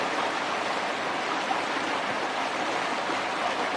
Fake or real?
real